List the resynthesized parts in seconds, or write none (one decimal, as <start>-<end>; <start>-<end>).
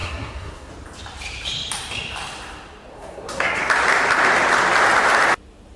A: 0.0-0.7; 2.9-3.6